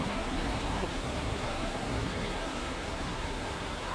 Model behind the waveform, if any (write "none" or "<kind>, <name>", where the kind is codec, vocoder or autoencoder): codec, SNAC